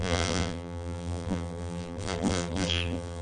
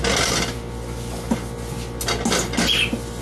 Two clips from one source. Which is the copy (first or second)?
first